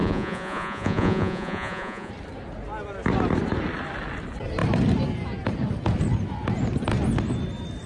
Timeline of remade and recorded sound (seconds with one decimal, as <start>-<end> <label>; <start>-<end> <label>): 0.0-2.1 remade; 2.1-7.9 recorded